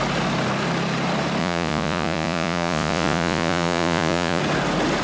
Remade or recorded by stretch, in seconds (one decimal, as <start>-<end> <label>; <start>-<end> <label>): 0.0-1.4 recorded; 1.4-4.4 remade; 4.4-5.0 recorded